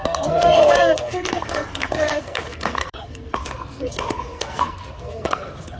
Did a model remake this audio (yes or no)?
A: yes